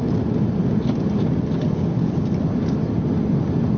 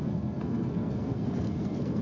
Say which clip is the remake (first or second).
second